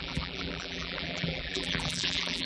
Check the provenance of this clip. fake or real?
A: fake